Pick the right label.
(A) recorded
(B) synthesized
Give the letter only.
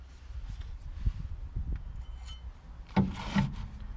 A